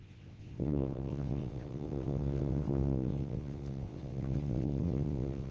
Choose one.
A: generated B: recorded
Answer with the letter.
A